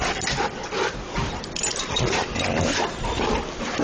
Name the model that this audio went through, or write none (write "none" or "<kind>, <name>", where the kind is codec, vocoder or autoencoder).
vocoder, BigVGAN v2